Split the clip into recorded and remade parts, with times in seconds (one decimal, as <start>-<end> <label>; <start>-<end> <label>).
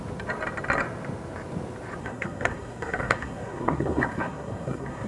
0.0-2.0 recorded; 2.0-5.1 remade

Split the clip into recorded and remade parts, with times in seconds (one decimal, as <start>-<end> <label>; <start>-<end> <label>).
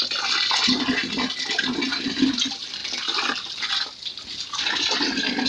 0.0-5.5 recorded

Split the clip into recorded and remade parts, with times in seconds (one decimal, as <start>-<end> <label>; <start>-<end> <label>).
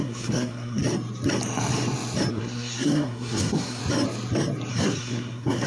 0.0-0.8 remade; 0.8-2.3 recorded; 2.3-3.8 remade; 3.8-4.7 recorded; 4.7-5.7 remade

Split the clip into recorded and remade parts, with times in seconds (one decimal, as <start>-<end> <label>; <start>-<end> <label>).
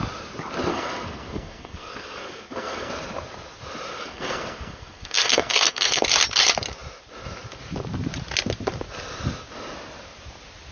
0.0-0.7 recorded; 0.7-2.9 remade; 2.9-3.9 recorded; 3.9-6.0 remade; 6.0-10.7 recorded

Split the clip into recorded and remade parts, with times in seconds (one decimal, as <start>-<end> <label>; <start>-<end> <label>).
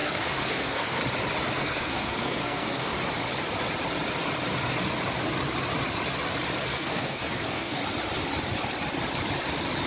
0.0-1.0 remade; 1.0-1.5 recorded; 1.5-2.9 remade; 2.9-6.6 recorded; 6.6-7.8 remade; 7.8-9.9 recorded